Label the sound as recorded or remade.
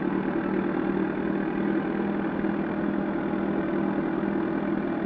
recorded